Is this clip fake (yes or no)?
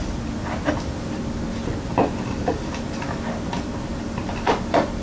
no